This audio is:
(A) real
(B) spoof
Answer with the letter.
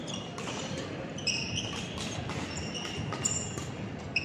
B